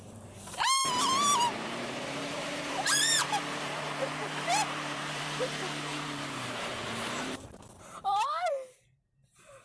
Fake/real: fake